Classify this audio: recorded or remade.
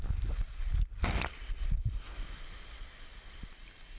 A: recorded